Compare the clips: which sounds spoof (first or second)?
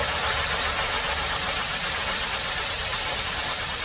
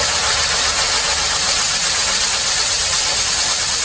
first